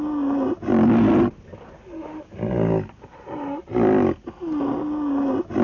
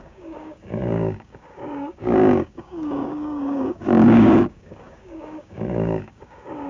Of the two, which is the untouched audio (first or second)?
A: first